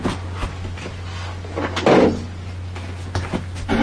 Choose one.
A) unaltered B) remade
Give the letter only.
A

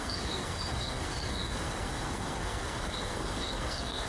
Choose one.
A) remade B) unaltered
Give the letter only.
A